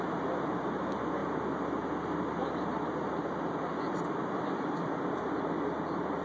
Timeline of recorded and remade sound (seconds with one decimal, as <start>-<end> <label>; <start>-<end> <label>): 0.0-6.2 recorded